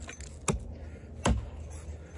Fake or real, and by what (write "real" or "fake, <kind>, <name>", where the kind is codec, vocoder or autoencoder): real